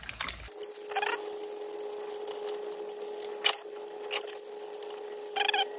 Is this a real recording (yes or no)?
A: yes